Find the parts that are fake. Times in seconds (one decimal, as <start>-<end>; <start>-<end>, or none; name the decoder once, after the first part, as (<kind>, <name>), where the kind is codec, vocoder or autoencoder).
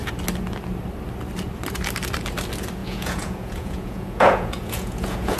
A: 2.8-5.4 (vocoder, Vocos)